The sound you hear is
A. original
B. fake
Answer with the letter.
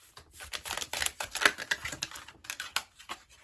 A